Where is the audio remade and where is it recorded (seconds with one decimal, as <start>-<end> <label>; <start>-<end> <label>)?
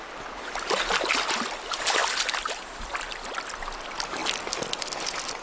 0.0-5.4 recorded